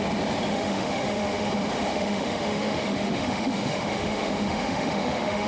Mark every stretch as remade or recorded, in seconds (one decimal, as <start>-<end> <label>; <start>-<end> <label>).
0.0-0.5 recorded; 0.5-1.5 remade; 1.5-1.9 recorded; 1.9-5.5 remade